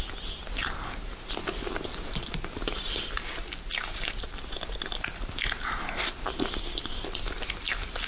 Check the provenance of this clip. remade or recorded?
recorded